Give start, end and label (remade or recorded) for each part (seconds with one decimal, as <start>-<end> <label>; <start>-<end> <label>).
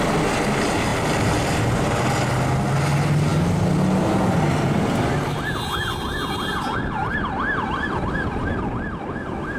0.0-9.6 recorded